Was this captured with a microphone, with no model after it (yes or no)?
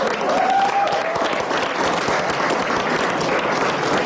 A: no